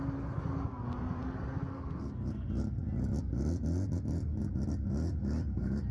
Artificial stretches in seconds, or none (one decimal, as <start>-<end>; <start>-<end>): none